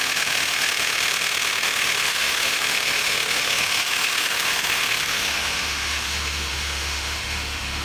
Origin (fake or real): fake